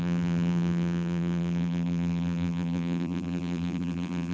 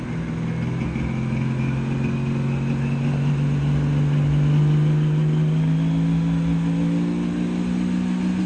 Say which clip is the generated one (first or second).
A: first